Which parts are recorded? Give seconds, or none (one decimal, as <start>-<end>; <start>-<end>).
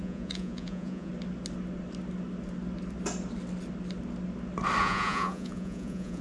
1.1-4.8